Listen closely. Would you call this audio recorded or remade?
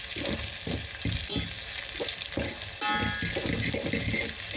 recorded